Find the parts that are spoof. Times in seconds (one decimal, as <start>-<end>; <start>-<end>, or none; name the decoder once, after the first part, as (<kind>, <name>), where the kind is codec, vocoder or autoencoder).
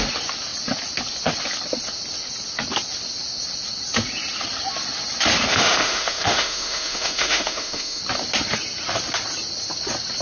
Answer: 5.5-8.0 (autoencoder, DAC-VAE)